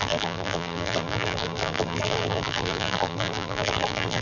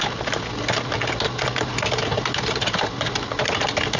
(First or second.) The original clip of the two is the second